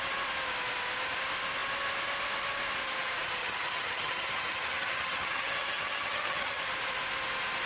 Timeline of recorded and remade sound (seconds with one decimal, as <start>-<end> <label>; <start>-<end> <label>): 0.0-3.4 recorded; 3.4-6.6 remade; 6.6-7.7 recorded